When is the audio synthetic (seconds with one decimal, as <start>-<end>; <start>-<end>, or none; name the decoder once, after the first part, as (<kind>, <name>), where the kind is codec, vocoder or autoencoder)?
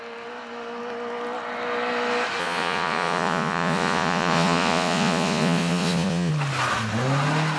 2.4-6.3 (vocoder, Vocos)